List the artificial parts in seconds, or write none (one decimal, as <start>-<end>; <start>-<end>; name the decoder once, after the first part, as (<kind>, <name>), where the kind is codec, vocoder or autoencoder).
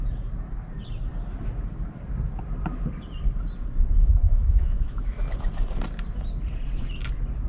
4.0-5.2 (autoencoder, DAC-VAE)